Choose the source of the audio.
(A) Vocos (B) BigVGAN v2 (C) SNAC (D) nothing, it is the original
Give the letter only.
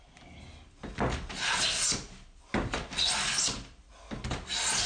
D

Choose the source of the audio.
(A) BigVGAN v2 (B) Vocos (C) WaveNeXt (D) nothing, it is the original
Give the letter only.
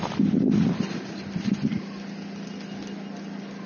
D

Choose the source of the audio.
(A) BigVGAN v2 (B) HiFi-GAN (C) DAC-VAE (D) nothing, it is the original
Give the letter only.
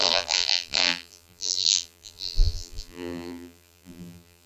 A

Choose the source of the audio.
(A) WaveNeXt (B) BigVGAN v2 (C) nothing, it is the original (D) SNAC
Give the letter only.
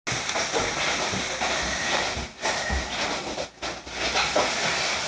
C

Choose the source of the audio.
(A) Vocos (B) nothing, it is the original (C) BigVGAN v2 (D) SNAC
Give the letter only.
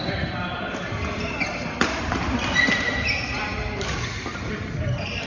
B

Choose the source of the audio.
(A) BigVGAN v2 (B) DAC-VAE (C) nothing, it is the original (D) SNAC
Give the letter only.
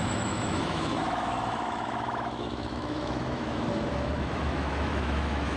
B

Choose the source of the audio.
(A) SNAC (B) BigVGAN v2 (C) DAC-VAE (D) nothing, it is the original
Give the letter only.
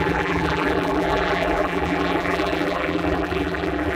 B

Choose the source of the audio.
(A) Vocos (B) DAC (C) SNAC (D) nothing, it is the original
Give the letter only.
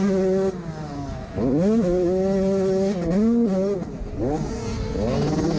D